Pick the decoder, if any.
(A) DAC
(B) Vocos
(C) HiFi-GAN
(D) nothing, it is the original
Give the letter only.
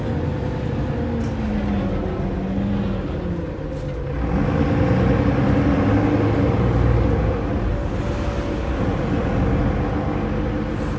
D